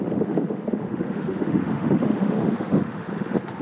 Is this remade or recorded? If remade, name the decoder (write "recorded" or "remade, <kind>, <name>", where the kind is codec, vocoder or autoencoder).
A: remade, autoencoder, DAC-VAE